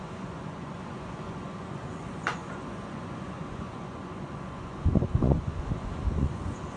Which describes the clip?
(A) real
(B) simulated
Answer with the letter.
B